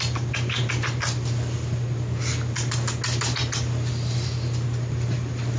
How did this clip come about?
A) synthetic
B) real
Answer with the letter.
B